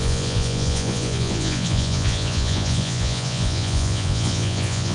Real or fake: fake